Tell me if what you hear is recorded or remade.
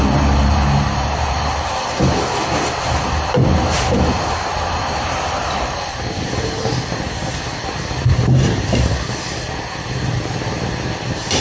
remade